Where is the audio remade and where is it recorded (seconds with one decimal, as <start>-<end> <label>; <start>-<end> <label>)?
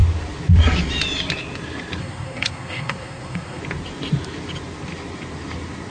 0.0-2.0 recorded; 2.0-3.6 remade; 3.6-5.9 recorded